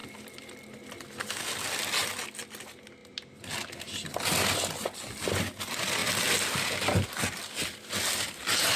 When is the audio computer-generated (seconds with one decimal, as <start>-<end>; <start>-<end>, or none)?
none

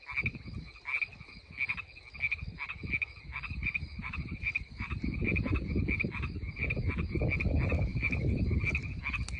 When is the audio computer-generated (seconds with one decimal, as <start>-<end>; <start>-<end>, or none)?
3.6-7.2; 7.9-9.0

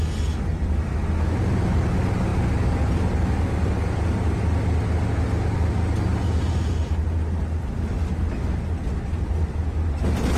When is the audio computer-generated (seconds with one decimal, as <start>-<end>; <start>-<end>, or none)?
none

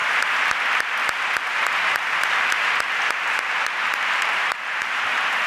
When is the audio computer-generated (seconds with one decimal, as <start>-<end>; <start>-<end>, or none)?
3.3-5.5

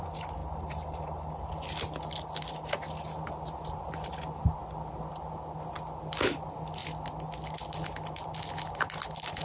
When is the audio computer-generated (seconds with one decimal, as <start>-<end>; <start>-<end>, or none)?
0.4-1.3